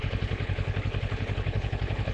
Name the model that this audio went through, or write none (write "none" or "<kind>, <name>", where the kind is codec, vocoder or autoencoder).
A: codec, HILCodec